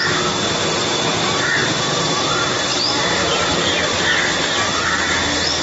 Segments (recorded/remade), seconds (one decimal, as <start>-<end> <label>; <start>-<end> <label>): 0.0-1.6 recorded; 1.6-2.6 remade; 2.6-5.6 recorded